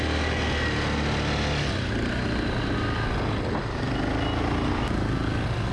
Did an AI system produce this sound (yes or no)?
no